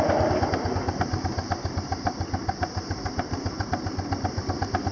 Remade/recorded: recorded